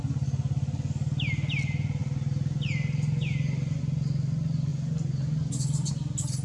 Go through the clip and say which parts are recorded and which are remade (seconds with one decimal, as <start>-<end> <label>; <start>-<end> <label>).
0.0-6.4 recorded